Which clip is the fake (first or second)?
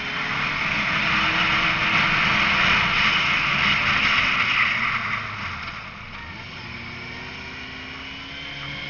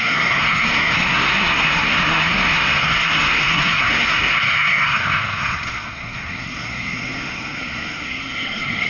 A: second